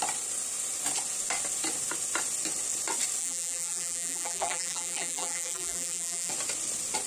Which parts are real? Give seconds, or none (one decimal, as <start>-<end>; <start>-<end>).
0.0-3.2; 6.3-7.1